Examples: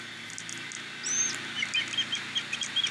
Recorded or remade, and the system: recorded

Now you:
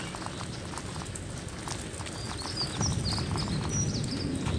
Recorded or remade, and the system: recorded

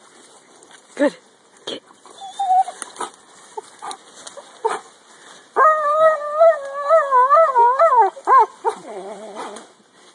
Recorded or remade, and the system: recorded